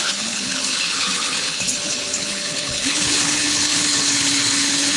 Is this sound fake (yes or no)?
yes